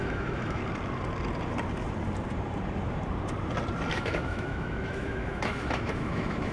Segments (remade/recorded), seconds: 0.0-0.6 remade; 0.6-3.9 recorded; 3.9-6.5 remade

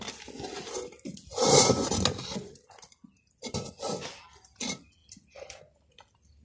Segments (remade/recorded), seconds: 0.0-6.4 recorded